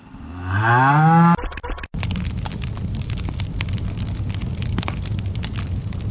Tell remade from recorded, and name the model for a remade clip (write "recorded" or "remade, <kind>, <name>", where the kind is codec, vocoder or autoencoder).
recorded